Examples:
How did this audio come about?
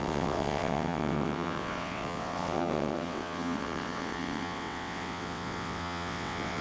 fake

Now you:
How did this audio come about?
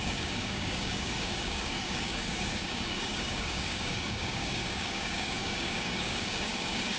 fake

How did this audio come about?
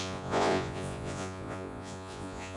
fake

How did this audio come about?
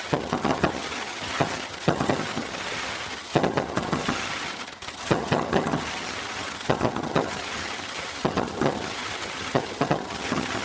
fake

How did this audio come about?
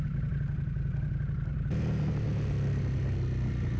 real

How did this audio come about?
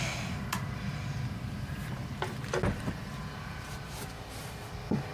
real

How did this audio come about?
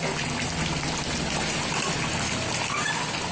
real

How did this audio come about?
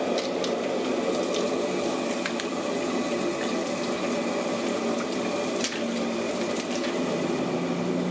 real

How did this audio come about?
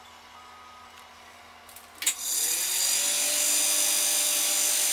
real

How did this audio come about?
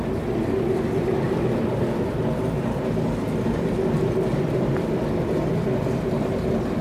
real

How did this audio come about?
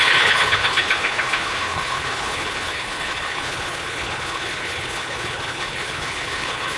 fake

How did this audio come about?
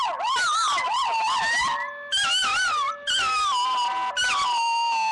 real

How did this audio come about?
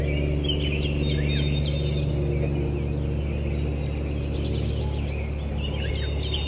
real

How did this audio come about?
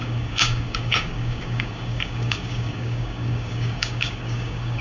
fake